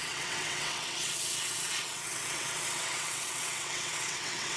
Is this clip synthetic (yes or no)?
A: yes